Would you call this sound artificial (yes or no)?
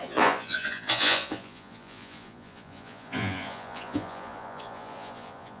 yes